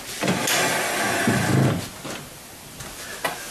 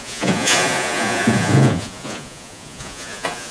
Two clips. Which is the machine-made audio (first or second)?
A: second